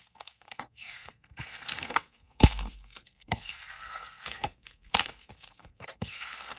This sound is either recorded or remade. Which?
remade